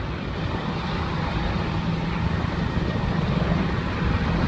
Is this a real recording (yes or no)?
yes